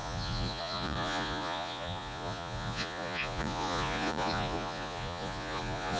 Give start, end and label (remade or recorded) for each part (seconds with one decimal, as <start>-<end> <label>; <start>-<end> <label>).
0.0-6.0 remade